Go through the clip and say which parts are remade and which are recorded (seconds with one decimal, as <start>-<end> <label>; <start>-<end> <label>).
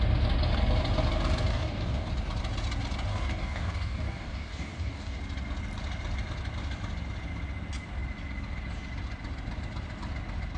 0.0-1.5 recorded; 1.5-2.1 remade; 2.1-3.1 recorded; 3.1-5.2 remade; 5.2-10.6 recorded